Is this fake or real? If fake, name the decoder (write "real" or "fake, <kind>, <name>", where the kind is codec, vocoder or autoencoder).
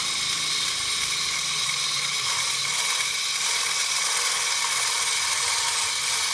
real